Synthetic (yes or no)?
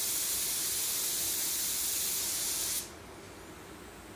no